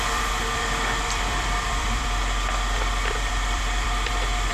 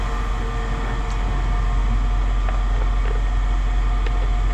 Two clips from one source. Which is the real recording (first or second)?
second